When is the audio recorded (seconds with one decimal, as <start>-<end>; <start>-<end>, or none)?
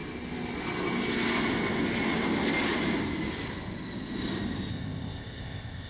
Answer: 0.0-4.7